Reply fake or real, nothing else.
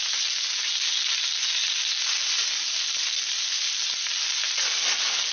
real